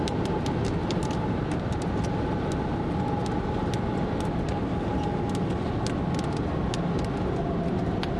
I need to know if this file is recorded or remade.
recorded